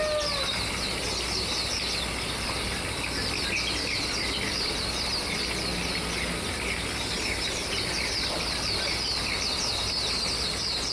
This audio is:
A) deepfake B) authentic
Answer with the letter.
B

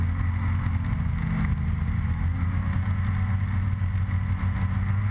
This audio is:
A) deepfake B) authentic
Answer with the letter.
B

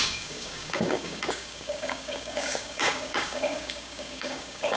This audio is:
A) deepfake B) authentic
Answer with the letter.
A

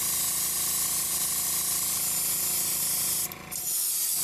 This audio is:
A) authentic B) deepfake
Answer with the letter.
A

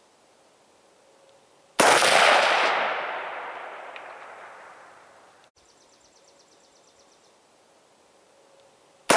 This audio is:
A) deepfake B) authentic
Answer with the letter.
A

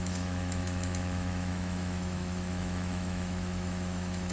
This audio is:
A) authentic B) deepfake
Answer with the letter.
B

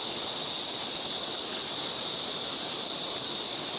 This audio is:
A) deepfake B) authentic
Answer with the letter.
B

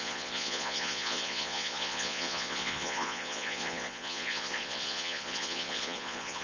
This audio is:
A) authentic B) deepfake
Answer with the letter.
B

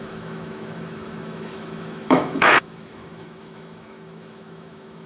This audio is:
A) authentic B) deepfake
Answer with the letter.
B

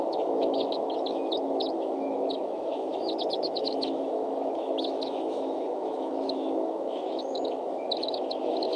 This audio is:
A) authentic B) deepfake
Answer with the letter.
B